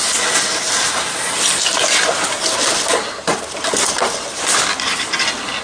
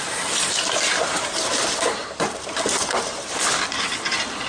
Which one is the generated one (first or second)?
second